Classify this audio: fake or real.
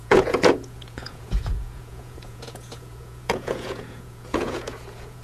fake